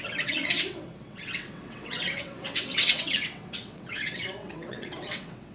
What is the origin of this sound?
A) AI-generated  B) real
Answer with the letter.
A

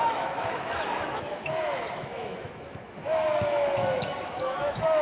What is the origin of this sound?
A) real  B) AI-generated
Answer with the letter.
B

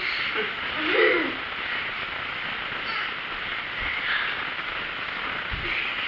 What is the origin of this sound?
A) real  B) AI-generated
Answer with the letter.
A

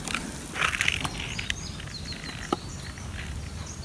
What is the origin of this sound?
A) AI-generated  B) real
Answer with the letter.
B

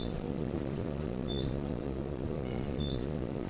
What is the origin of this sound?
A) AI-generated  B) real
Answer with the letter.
A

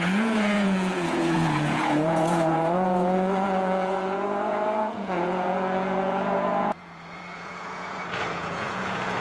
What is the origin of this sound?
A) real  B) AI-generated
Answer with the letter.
B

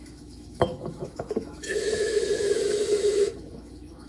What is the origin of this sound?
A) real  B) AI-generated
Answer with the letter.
B